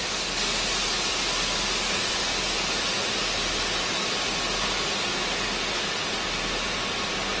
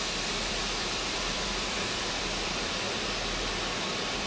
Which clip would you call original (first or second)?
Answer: first